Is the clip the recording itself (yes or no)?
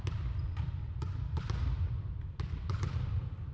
no